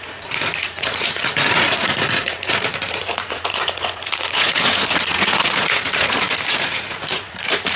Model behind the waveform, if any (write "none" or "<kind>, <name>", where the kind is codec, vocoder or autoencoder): vocoder, Vocos